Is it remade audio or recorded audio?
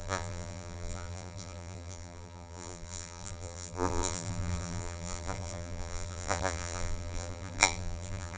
remade